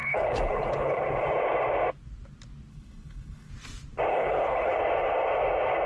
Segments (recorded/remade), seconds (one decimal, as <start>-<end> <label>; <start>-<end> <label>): 0.0-1.0 remade; 1.0-2.7 recorded; 2.7-3.5 remade; 3.5-4.1 recorded; 4.1-4.7 remade; 4.7-5.9 recorded